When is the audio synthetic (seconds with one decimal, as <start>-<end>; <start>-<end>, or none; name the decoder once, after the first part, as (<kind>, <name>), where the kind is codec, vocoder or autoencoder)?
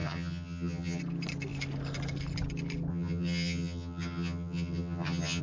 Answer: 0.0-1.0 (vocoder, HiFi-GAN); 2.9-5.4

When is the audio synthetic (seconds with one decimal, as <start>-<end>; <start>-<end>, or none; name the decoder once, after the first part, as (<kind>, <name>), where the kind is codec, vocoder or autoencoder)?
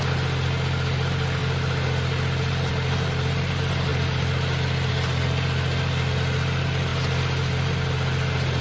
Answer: none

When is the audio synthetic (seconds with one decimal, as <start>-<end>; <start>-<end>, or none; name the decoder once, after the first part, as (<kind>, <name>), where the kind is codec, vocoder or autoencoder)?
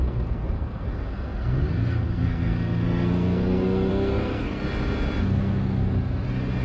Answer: 0.0-4.6 (codec, SNAC); 5.2-5.8